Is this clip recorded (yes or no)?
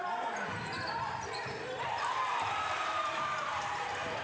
no